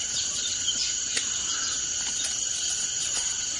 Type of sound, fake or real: real